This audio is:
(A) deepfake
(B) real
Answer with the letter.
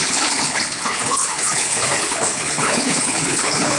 A